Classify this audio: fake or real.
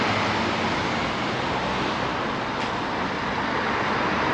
real